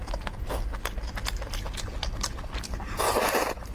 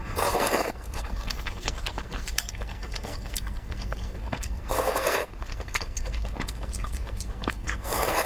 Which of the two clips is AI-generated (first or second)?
second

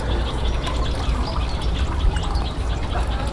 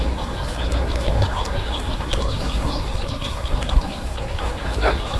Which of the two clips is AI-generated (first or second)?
second